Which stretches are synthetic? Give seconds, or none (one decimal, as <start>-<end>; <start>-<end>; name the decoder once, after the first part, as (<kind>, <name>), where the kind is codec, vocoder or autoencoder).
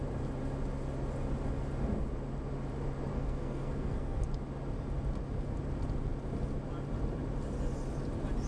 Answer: 3.1-4.2 (codec, SNAC)